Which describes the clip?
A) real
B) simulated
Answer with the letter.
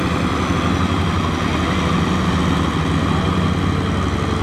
A